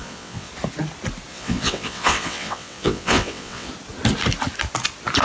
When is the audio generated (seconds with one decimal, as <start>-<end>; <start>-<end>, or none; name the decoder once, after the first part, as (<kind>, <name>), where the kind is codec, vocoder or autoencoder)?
0.0-0.5 (vocoder, WaveNeXt); 1.3-3.7